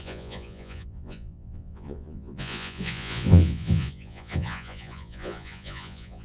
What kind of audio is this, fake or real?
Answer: fake